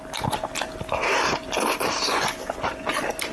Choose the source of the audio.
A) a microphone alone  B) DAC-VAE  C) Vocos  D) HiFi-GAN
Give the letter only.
A